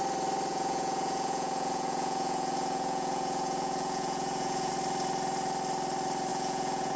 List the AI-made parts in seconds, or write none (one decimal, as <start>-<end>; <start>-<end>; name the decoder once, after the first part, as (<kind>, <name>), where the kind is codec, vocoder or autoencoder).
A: 0.5-4.7 (vocoder, Vocos); 6.3-7.0